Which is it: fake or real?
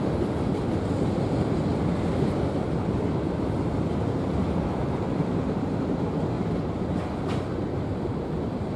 real